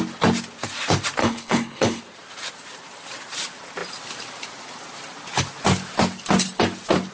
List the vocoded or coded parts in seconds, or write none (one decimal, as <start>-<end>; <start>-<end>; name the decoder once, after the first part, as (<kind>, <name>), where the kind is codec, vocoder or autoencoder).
1.2-2.0 (codec, HILCodec)